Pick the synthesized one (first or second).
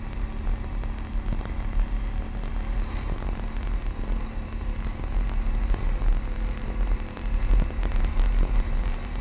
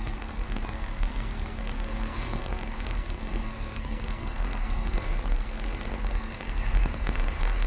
second